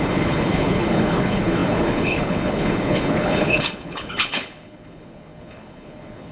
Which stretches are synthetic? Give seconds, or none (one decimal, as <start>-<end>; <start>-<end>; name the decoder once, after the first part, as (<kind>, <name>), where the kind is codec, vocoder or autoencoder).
0.0-6.3 (codec, HILCodec)